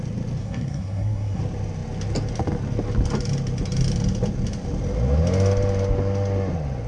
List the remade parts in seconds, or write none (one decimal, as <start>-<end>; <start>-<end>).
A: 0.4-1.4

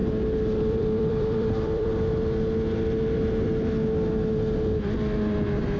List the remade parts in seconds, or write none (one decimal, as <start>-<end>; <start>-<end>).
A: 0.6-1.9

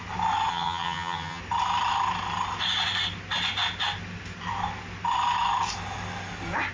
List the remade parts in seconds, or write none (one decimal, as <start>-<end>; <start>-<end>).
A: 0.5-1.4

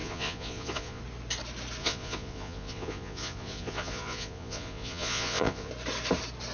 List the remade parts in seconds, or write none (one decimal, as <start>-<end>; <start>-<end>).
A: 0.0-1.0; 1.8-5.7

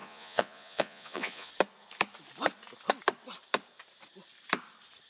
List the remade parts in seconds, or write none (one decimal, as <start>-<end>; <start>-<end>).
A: 0.0-1.5

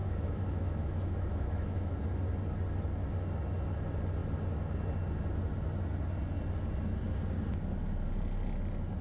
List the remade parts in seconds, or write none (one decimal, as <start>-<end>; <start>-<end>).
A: 0.0-1.9

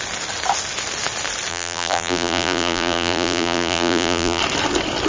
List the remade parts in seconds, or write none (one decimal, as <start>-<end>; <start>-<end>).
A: 1.5-4.4

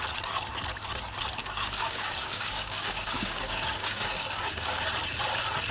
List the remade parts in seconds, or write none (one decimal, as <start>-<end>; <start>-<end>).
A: 1.4-4.8